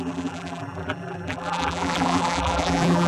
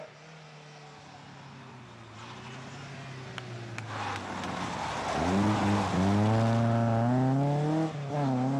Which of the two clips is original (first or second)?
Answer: second